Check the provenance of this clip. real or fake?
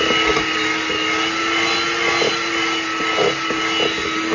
real